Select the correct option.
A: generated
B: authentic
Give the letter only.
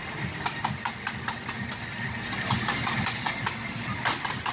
B